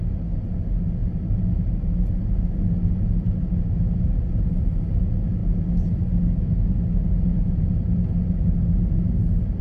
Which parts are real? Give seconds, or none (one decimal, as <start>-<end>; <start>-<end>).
0.0-9.6